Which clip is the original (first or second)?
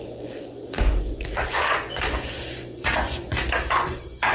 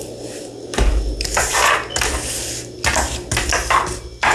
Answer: second